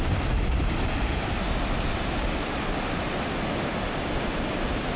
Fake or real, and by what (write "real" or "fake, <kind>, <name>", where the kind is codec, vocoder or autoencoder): real